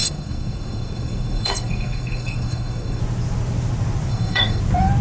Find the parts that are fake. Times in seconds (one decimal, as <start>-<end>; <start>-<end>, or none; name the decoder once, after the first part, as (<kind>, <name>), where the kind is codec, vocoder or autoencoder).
0.0-3.0 (codec, SNAC); 4.1-4.6